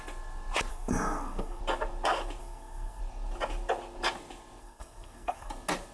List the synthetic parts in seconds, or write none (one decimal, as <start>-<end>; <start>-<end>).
0.7-1.6; 2.4-3.0; 4.6-5.5